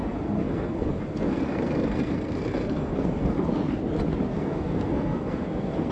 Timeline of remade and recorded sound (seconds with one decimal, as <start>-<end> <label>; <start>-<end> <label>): 0.0-3.5 remade; 3.5-4.3 recorded; 4.3-5.9 remade